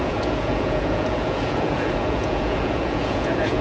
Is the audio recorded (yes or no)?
no